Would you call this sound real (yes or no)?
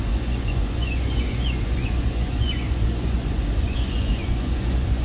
no